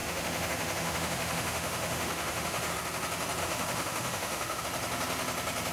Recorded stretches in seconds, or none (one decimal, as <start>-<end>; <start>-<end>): 2.7-3.4; 4.6-5.7